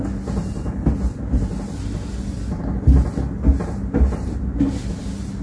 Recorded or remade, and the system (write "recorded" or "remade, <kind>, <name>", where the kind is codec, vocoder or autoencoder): recorded